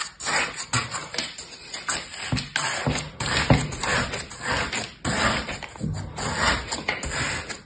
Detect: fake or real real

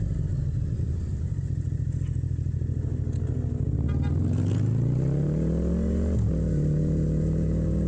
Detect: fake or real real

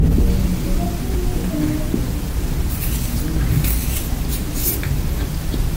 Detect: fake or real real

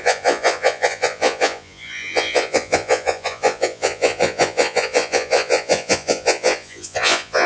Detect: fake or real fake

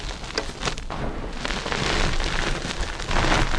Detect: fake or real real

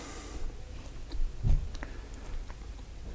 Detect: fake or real real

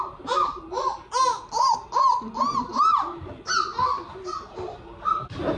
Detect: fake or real real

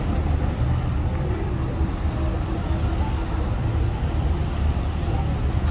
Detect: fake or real real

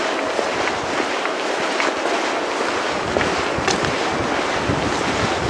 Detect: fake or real real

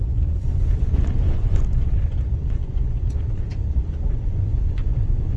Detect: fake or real fake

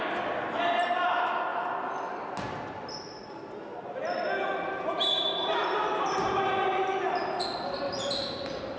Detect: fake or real real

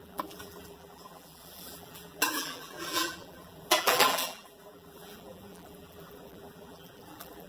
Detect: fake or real fake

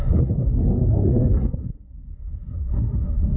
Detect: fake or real fake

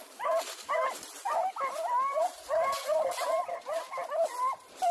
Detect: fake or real real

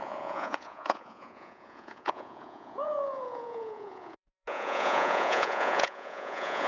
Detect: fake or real fake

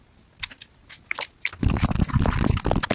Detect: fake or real real